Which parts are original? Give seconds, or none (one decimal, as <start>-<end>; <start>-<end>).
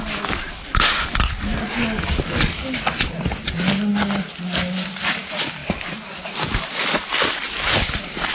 0.0-8.3